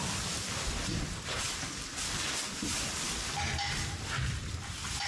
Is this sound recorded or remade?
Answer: remade